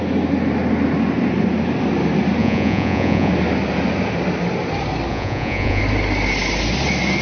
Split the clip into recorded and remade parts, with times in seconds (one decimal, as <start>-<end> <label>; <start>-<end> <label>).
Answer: 0.0-2.4 recorded; 2.4-3.3 remade; 3.3-5.1 recorded; 5.1-5.8 remade; 5.8-7.2 recorded